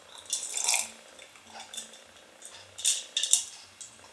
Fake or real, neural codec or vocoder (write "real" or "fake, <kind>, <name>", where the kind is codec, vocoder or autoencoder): real